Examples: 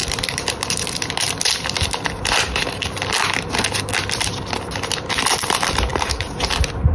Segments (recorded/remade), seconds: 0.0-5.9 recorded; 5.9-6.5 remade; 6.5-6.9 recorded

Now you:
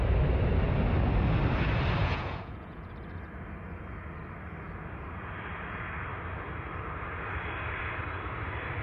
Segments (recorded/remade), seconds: 0.0-2.0 recorded; 2.0-2.9 remade; 2.9-8.8 recorded